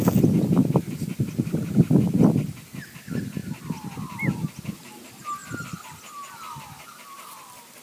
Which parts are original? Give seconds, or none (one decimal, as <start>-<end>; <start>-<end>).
0.0-0.6; 1.9-7.8